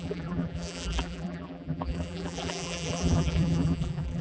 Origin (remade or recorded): remade